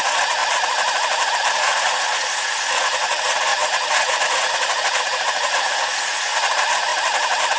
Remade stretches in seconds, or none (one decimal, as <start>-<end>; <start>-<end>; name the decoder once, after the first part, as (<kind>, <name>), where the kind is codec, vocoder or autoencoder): 0.0-0.4 (vocoder, Vocos); 1.5-6.9